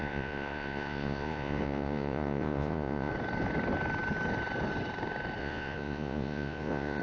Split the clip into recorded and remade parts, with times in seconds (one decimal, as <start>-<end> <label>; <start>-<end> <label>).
0.0-3.1 remade; 3.1-5.4 recorded; 5.4-7.0 remade